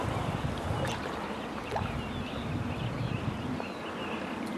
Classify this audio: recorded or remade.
recorded